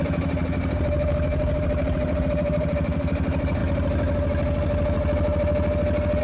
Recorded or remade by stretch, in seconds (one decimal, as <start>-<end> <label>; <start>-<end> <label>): 0.0-3.6 remade; 3.6-6.2 recorded